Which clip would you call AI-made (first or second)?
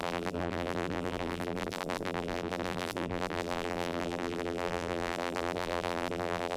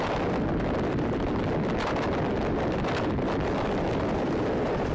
first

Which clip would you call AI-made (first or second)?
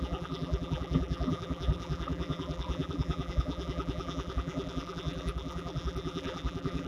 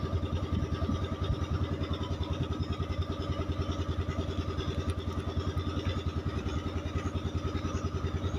first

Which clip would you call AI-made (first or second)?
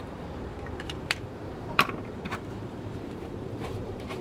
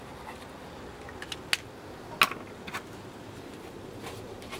first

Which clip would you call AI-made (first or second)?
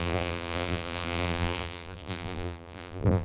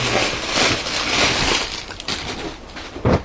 first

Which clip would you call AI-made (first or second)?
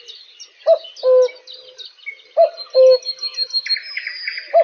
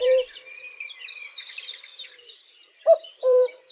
second